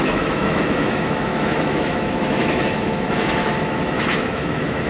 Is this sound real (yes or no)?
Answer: no